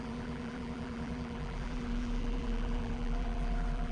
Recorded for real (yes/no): no